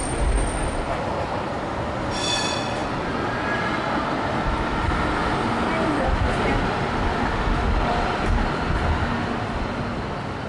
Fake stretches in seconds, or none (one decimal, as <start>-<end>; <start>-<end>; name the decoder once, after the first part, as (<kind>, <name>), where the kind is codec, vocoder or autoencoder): none